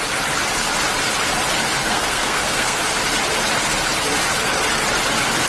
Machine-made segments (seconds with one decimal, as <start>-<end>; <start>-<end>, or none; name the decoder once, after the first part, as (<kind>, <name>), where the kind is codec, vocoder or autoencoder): 1.8-2.8 (codec, SNAC)